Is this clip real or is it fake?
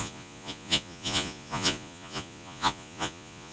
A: fake